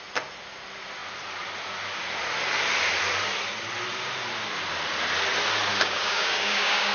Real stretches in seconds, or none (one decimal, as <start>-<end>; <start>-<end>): 0.0-5.7